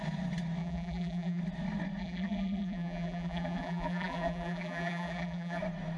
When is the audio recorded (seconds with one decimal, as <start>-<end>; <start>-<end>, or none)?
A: 0.0-0.6; 1.4-2.0; 5.6-6.0